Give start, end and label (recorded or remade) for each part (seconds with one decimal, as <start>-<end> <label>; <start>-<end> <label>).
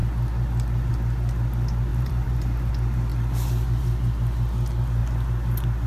0.0-1.9 recorded; 1.9-2.7 remade; 2.7-5.9 recorded